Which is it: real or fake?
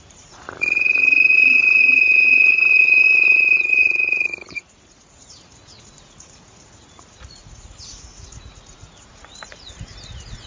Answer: fake